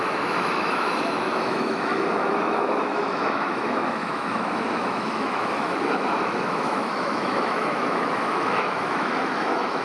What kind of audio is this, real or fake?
fake